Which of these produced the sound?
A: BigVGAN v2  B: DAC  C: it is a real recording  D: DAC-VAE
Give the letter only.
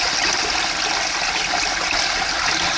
C